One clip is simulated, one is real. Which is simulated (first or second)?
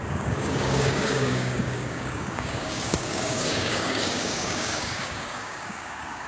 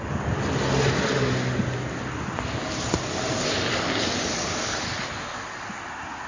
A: first